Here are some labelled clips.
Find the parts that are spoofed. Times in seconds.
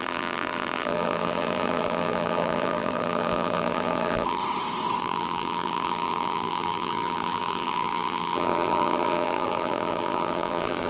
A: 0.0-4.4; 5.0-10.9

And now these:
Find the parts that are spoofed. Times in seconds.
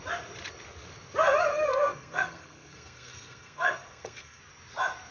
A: 1.5-4.4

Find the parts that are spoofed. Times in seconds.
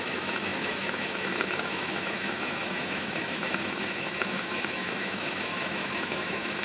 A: 0.0-6.6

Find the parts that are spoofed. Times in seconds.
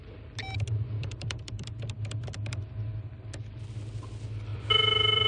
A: 1.0-3.4; 4.5-5.3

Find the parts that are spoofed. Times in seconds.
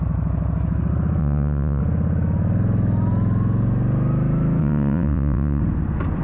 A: 1.2-1.8; 4.6-5.6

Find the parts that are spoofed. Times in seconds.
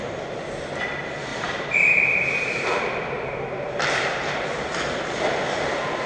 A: 1.3-4.4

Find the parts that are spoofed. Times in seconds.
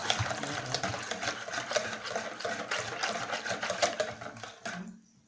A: none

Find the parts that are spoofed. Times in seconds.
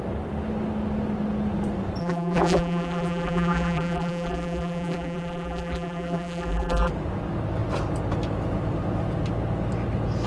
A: 2.0-6.9